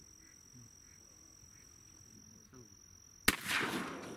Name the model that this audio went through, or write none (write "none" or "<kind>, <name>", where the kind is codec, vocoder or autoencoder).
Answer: none